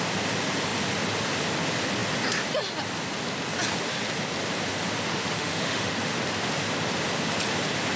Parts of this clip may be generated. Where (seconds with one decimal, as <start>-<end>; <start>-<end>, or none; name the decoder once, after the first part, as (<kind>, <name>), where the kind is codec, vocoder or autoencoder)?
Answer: 5.1-5.9 (autoencoder, DAC-VAE)